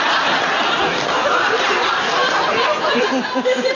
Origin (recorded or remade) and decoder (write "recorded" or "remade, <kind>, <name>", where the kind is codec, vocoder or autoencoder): recorded